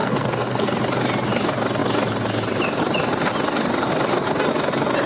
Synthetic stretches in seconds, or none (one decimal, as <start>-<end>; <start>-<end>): 0.0-0.8

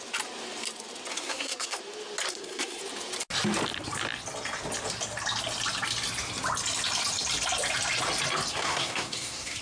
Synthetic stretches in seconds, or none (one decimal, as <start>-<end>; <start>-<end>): 1.1-1.8; 2.3-2.8; 8.5-9.6

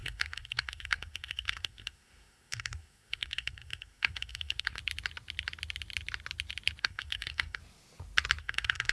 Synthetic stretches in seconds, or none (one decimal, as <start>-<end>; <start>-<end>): 0.0-4.8; 6.8-7.6; 8.4-8.9

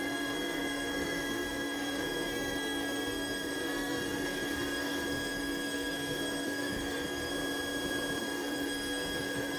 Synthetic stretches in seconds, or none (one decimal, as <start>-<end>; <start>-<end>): 0.0-7.3; 8.2-9.6

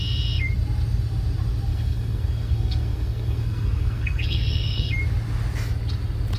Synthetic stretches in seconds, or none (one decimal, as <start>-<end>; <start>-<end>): 1.7-4.9

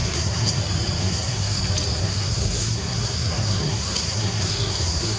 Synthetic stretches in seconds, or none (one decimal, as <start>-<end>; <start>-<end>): 0.0-0.6; 1.0-1.6; 2.0-5.2

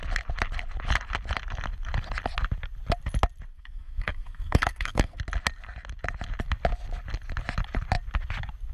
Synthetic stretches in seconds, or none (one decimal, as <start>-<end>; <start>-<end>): 3.5-5.2